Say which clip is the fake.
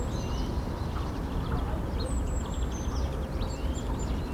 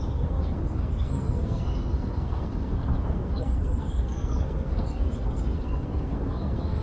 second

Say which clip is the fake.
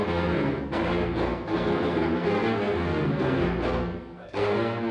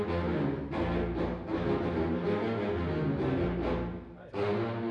first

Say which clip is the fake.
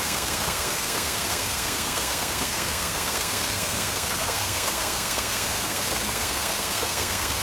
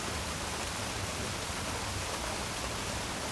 first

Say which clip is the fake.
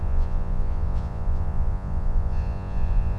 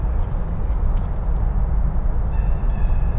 first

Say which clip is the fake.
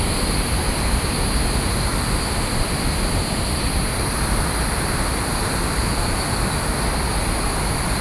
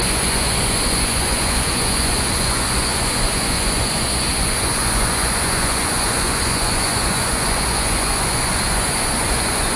second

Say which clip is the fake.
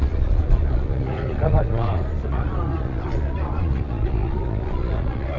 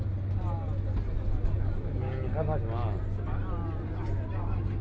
first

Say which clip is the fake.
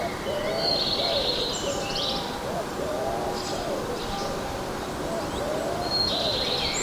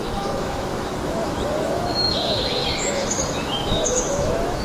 second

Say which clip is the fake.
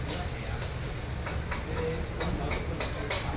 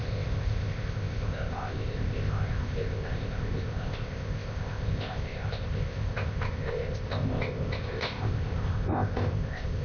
second